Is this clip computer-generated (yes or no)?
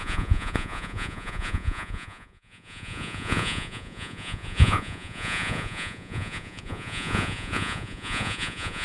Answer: yes